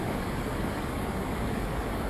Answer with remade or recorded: remade